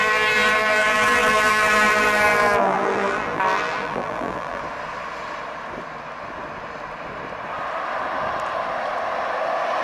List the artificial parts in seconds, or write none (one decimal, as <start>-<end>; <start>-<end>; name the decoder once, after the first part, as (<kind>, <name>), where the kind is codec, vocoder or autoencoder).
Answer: 0.0-4.6 (vocoder, BigVGAN v2)